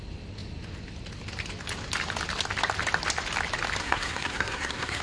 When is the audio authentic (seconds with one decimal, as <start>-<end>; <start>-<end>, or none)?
0.0-3.8